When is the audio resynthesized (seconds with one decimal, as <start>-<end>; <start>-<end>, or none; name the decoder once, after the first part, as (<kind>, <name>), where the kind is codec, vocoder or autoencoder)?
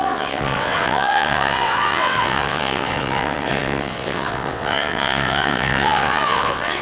0.0-6.8 (vocoder, WaveNeXt)